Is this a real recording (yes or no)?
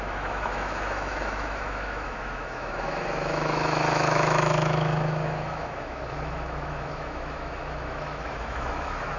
no